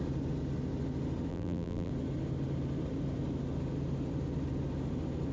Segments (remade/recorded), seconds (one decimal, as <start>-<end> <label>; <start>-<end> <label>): 0.0-1.3 recorded; 1.3-1.9 remade; 1.9-5.3 recorded